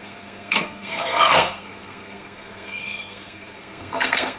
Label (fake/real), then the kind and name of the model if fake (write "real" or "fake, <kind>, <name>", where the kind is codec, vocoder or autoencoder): fake, codec, SNAC